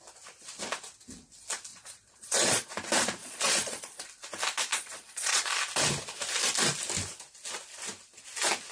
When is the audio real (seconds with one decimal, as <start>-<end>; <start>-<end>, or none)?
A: 0.0-1.7; 2.7-3.2; 4.0-4.7; 5.5-8.7